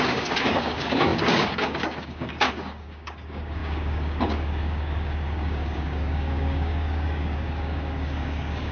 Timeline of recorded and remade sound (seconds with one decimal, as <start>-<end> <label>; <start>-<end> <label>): 0.0-8.7 remade